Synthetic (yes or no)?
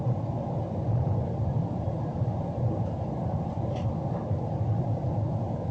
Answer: no